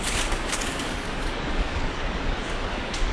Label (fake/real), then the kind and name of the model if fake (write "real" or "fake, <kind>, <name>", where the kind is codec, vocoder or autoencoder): fake, codec, DAC